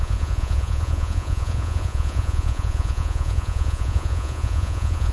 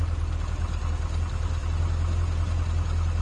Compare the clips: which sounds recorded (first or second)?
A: second